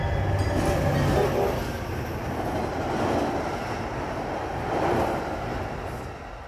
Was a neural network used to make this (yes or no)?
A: no